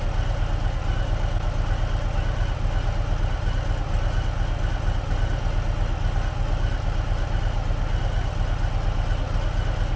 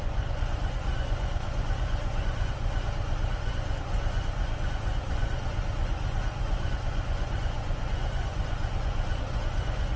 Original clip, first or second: first